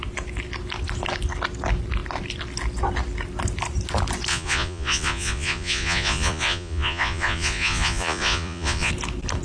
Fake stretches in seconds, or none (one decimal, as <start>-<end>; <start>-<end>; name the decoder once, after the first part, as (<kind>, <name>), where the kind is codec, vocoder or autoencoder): 4.3-8.9 (vocoder, Vocos)